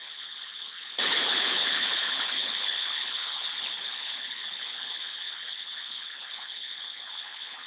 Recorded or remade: remade